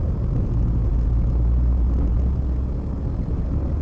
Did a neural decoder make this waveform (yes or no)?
no